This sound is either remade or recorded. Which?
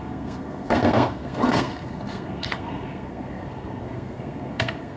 remade